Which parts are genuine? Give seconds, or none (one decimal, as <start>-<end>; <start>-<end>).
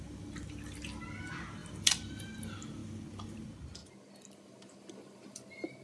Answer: 0.0-5.8